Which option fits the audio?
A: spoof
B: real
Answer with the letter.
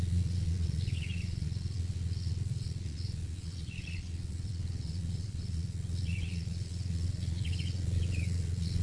A